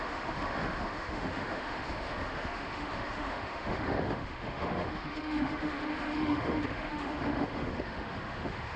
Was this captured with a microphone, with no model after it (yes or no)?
no